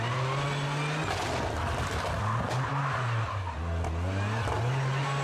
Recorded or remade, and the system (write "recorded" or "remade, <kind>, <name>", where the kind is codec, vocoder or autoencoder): recorded